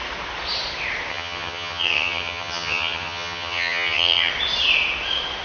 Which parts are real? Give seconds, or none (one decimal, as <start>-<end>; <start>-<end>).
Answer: 0.0-1.1; 4.3-5.4